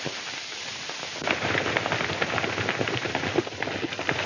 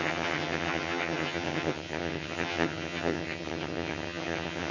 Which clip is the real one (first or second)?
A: first